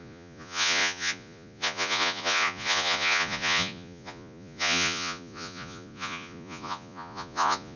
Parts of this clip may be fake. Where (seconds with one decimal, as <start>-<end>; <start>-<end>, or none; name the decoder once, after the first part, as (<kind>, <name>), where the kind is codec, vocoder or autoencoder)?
0.0-7.8 (vocoder, Vocos)